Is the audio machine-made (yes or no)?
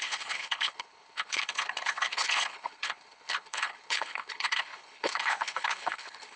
yes